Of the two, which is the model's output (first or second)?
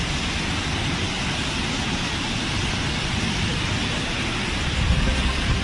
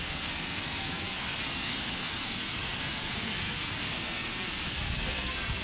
second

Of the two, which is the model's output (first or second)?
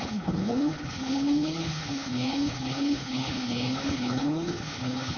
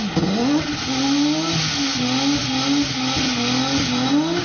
first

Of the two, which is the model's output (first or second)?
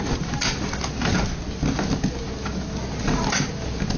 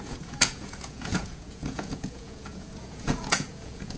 second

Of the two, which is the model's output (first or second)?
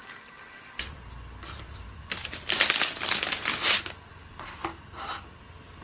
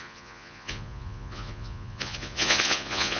second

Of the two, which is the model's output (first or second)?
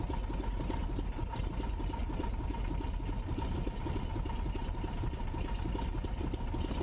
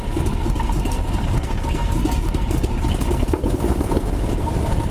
second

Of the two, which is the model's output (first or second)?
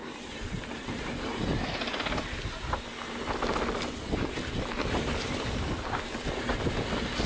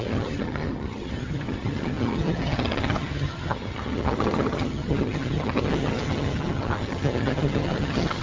second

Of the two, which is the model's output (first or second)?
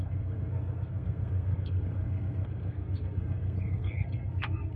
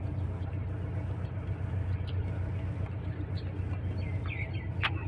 first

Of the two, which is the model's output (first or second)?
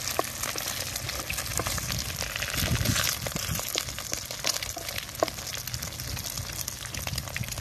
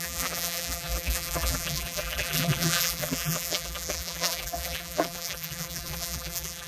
second